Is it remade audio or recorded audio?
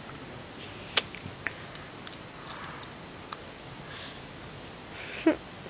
recorded